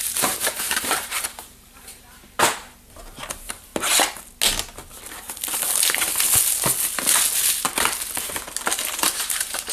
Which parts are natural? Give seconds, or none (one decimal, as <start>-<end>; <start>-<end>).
3.7-8.9